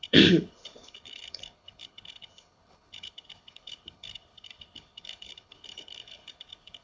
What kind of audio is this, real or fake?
fake